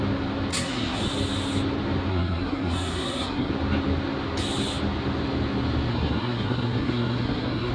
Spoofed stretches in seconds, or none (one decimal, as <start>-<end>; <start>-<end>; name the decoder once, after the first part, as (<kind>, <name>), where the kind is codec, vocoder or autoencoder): 0.5-1.0 (codec, SNAC); 2.1-3.5; 5.9-7.7